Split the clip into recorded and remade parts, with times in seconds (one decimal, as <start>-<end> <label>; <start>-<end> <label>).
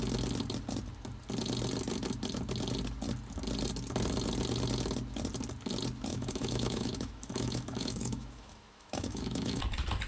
0.0-6.1 recorded; 6.1-9.6 remade; 9.6-10.1 recorded